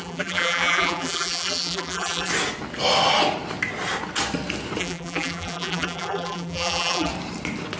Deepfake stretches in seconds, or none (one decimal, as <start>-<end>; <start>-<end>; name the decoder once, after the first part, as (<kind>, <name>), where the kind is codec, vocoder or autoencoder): 0.0-2.3 (vocoder, BigVGAN v2); 4.8-7.1